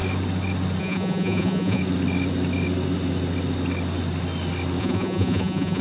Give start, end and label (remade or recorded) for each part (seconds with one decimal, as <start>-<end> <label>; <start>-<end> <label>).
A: 0.0-0.8 recorded; 0.8-1.8 remade; 1.8-4.8 recorded; 4.8-5.8 remade